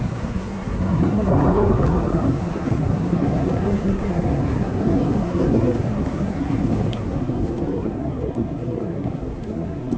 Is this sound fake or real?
fake